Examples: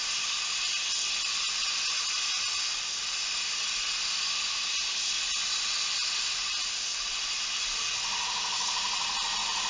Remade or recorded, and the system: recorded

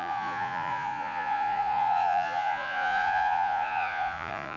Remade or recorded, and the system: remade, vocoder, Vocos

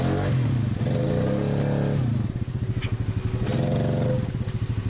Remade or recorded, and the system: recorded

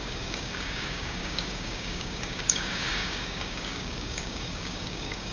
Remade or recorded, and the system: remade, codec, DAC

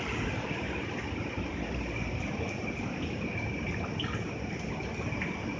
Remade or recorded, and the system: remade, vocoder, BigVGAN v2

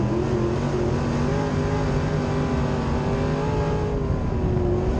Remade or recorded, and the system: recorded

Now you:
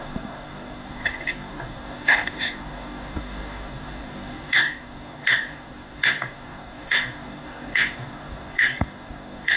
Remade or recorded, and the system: remade, codec, DAC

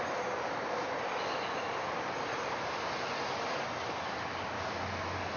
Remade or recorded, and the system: recorded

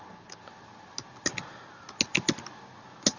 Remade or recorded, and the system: recorded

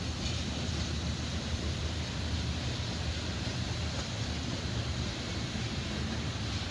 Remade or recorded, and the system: recorded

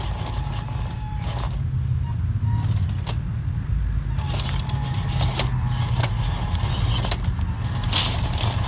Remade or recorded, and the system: recorded